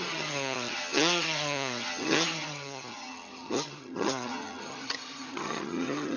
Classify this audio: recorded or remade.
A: remade